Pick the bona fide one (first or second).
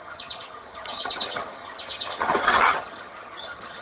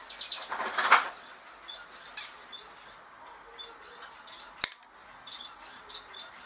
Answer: second